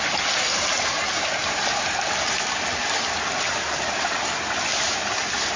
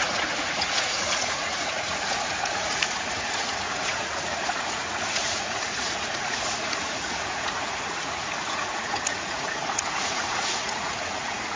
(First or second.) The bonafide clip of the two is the first